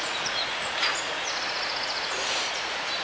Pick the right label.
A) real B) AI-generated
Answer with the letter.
B